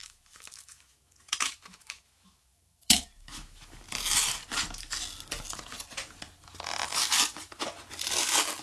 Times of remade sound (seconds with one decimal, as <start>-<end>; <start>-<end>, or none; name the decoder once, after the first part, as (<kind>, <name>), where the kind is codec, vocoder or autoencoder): 0.0-3.8 (autoencoder, DAC-VAE)